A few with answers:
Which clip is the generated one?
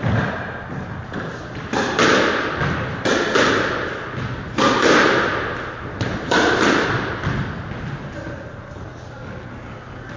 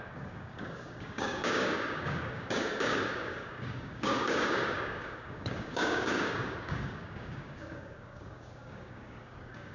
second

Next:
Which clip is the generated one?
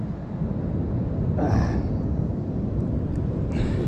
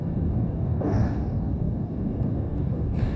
second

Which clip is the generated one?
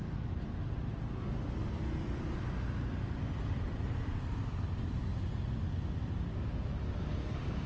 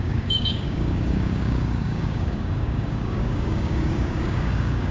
second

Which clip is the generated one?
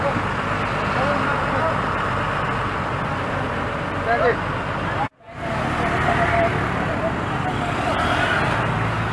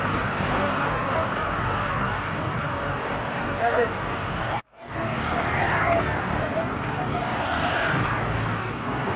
second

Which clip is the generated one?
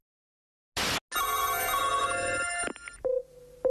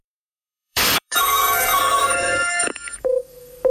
second